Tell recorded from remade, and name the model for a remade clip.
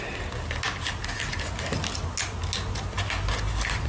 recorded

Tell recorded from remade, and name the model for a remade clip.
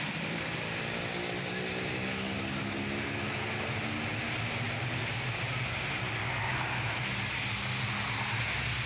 recorded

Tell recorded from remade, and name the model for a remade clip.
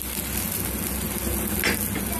recorded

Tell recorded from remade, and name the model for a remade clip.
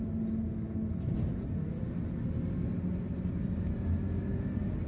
recorded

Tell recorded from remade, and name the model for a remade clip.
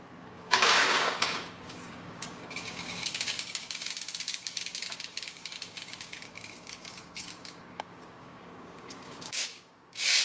remade, codec, DAC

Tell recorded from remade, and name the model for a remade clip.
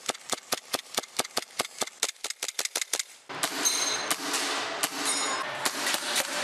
recorded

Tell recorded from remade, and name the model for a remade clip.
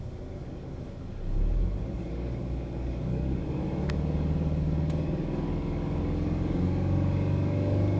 remade, codec, DAC